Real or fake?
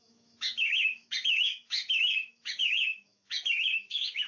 fake